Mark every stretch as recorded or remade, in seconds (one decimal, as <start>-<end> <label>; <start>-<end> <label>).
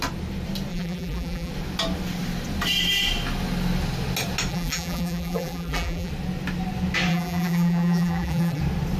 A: 0.0-0.7 recorded; 0.7-1.5 remade; 1.5-4.5 recorded; 4.5-6.1 remade; 6.1-7.1 recorded; 7.1-8.6 remade; 8.6-9.0 recorded